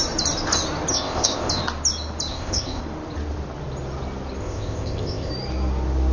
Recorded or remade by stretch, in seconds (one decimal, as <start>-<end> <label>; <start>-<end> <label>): 0.0-0.9 recorded; 0.9-1.5 remade; 1.5-2.3 recorded; 2.3-2.8 remade; 2.8-4.4 recorded; 4.4-5.3 remade; 5.3-6.1 recorded